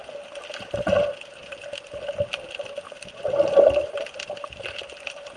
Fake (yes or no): no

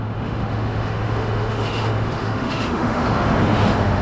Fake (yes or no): yes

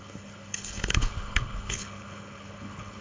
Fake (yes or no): yes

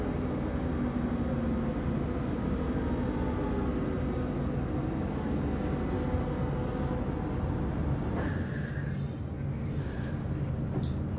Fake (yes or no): no